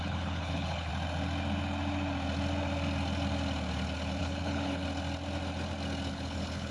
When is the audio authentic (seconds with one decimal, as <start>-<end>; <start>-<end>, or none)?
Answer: 0.9-4.2; 4.8-6.1